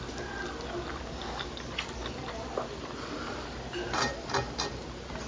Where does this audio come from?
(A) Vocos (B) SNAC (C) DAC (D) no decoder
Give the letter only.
D